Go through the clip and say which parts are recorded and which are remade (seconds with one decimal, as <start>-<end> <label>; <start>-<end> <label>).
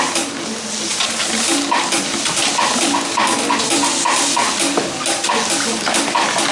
0.0-6.5 recorded